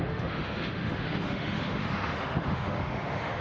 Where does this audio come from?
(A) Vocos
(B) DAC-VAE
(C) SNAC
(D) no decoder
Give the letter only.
B